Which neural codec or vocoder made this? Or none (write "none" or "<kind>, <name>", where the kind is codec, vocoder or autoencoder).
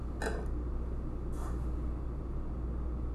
none